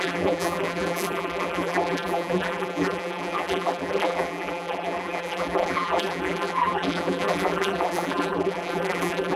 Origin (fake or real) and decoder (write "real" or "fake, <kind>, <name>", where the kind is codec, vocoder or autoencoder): fake, vocoder, BigVGAN v2